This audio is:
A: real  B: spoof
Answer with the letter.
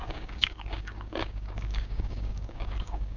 B